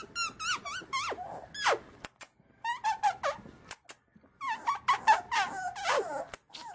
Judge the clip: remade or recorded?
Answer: recorded